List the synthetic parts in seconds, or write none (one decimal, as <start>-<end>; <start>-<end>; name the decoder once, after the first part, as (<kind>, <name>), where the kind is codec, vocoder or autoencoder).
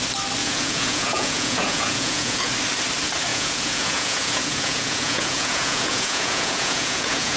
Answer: 0.4-2.5 (vocoder, Vocos); 3.3-7.4